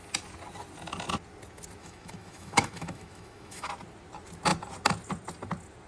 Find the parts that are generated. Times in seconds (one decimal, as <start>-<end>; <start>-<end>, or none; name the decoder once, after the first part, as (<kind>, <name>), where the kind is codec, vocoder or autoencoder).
1.8-3.7 (autoencoder, DAC-VAE)

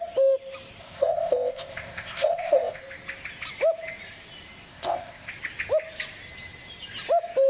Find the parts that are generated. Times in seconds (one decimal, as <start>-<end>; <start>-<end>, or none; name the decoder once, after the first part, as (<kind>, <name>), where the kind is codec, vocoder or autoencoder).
0.8-2.8 (codec, ZipCodec); 4.7-5.3

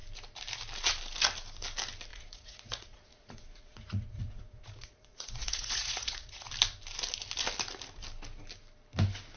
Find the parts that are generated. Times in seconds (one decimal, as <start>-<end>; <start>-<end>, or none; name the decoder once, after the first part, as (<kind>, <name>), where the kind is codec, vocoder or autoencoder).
2.1-6.5 (vocoder, Vocos)

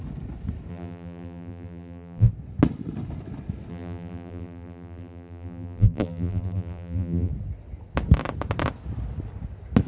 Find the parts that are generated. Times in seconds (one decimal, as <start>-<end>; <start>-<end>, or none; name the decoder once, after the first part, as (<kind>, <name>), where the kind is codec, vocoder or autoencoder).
0.7-2.3 (vocoder, BigVGAN v2); 3.7-7.3

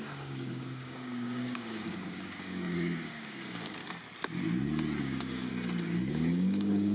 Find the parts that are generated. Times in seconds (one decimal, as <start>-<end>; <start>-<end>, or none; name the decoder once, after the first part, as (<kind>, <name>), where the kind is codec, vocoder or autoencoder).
0.0-3.8 (codec, DAC); 5.0-5.5; 6.1-6.9

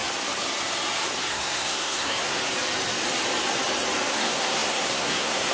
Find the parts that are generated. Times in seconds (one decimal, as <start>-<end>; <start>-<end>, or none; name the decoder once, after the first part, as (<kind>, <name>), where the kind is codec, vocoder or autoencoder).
1.3-2.4 (codec, SNAC); 4.1-5.5

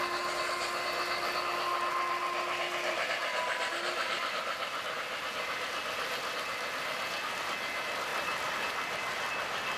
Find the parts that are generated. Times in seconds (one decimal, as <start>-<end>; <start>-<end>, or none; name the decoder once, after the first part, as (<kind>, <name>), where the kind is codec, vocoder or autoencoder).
none

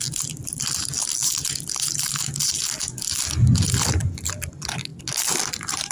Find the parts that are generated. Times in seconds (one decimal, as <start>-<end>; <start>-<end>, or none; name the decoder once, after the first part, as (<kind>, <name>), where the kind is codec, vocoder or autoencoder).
none